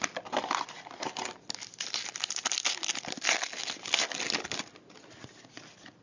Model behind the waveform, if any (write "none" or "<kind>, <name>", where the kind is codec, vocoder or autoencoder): none